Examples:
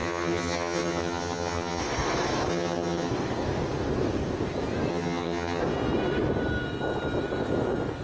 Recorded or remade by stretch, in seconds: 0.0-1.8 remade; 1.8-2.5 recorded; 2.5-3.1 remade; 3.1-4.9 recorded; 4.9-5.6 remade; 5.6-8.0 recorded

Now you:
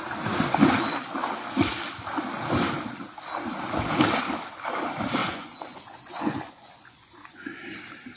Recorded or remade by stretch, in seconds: 0.0-5.2 recorded; 5.2-7.6 remade; 7.6-8.2 recorded

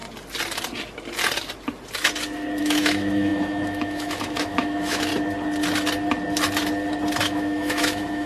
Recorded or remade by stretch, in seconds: 0.0-2.6 recorded; 2.6-5.1 remade; 5.1-7.2 recorded; 7.2-8.3 remade

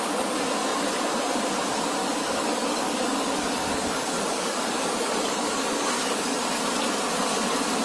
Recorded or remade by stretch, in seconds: 0.0-2.0 recorded; 2.0-6.6 remade; 6.6-7.8 recorded

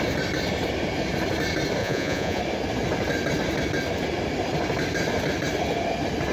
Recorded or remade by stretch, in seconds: 0.0-1.8 recorded; 1.8-2.4 remade; 2.4-6.3 recorded